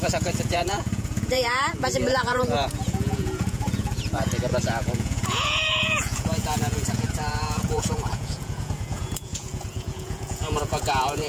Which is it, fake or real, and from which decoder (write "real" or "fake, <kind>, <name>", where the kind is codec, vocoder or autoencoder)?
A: fake, vocoder, Vocos